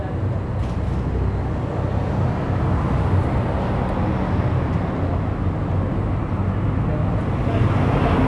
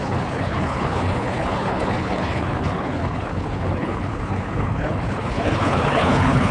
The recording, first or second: first